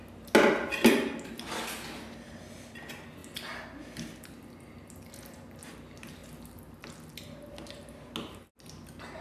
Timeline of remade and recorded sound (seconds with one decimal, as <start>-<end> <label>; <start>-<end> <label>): 0.0-9.2 recorded